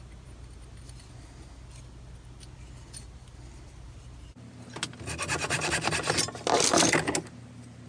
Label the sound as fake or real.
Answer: real